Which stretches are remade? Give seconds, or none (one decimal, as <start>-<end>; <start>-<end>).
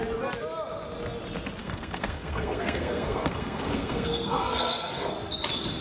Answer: 1.6-5.1